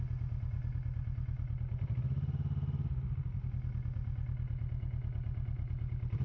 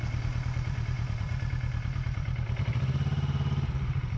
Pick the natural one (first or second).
first